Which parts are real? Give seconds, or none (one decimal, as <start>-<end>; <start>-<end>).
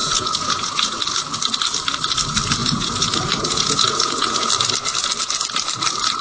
1.0-2.6; 4.5-6.2